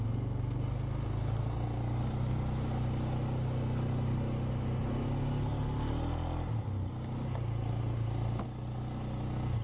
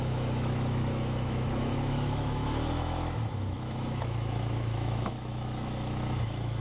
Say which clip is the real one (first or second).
first